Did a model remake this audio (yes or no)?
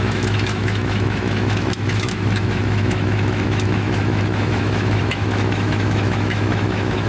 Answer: yes